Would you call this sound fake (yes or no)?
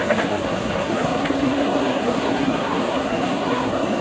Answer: yes